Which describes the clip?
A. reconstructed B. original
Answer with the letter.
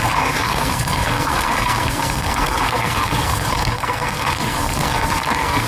A